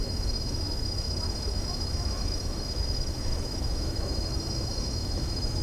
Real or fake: fake